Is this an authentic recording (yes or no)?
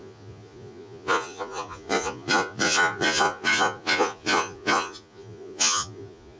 no